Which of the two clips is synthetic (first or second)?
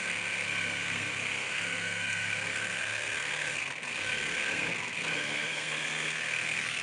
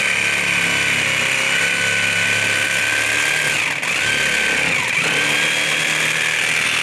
first